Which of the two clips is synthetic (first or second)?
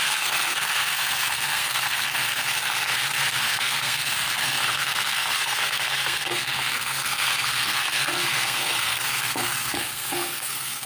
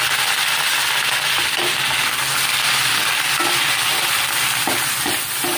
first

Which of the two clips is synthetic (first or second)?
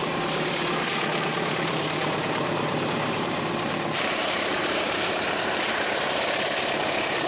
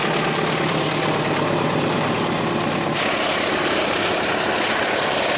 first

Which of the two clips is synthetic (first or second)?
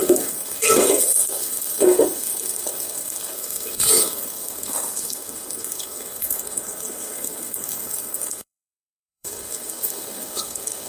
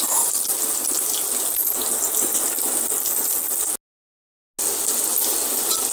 first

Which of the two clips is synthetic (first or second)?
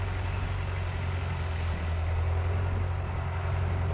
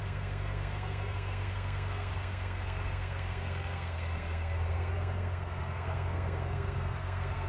second